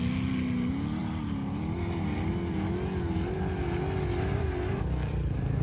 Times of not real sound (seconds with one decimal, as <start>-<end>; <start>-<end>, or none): none